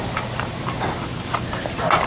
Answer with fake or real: real